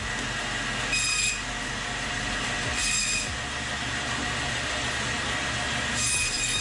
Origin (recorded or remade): recorded